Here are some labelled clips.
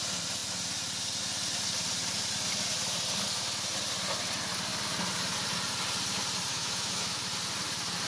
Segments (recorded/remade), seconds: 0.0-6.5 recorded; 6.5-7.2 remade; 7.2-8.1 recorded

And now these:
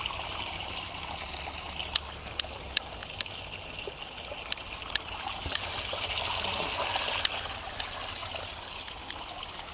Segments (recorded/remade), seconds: 0.0-9.7 recorded

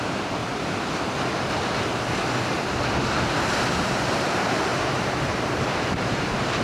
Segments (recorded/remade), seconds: 0.0-0.4 remade; 0.4-3.8 recorded; 3.8-6.6 remade

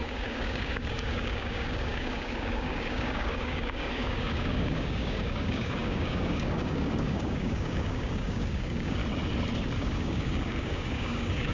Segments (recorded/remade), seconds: 0.0-9.0 remade; 9.0-9.8 recorded; 9.8-11.5 remade

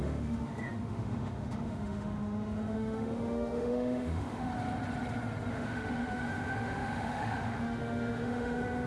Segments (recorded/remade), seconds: 0.0-4.5 remade; 4.5-5.5 recorded; 5.5-8.9 remade

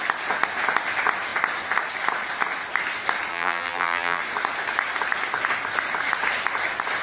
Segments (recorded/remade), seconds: 0.0-3.3 recorded; 3.3-4.2 remade; 4.2-7.0 recorded

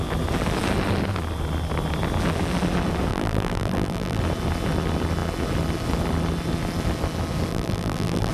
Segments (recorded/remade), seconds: 0.0-3.1 recorded; 3.1-4.2 remade; 4.2-7.5 recorded; 7.5-8.3 remade